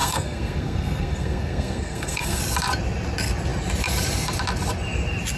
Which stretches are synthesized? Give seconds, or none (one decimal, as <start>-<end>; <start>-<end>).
0.0-2.4